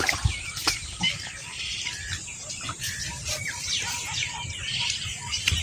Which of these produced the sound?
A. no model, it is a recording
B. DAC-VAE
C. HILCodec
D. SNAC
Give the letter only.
A